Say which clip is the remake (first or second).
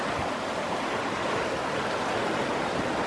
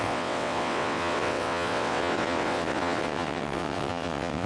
second